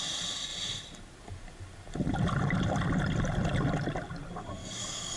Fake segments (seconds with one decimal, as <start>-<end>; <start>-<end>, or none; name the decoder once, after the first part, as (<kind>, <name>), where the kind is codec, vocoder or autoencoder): 4.6-5.2 (codec, DAC)